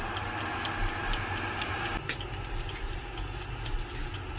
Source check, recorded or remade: recorded